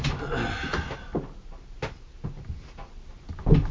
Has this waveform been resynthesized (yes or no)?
no